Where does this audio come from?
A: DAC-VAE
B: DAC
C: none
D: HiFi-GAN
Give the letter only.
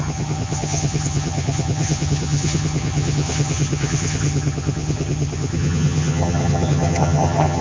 D